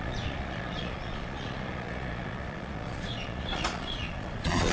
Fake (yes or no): yes